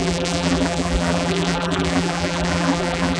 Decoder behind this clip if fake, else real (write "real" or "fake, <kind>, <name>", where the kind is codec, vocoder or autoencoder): fake, vocoder, BigVGAN v2